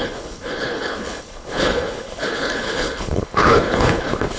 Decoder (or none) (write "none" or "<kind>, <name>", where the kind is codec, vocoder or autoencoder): codec, HILCodec